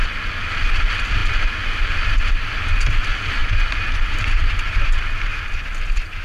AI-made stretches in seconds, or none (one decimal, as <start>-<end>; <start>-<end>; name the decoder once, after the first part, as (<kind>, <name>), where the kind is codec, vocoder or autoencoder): none